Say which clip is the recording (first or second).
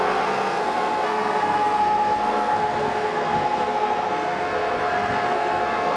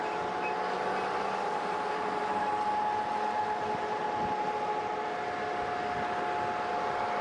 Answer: second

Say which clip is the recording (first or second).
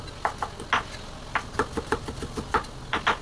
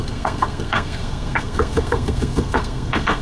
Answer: first